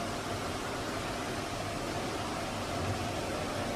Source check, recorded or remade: recorded